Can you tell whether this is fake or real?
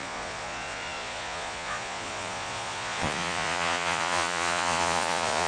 fake